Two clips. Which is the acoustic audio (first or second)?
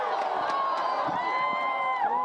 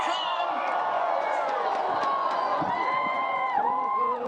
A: first